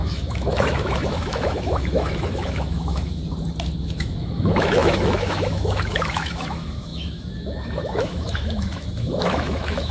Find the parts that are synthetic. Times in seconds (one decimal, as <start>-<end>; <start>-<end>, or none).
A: 0.0-3.2; 3.8-9.9